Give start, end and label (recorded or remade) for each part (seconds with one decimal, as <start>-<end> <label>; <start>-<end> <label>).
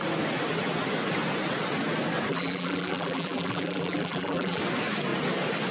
0.0-2.3 recorded; 2.3-4.6 remade; 4.6-5.7 recorded